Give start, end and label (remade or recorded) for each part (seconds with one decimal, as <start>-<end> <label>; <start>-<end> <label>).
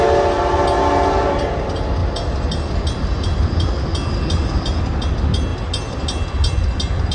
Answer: 0.0-7.1 recorded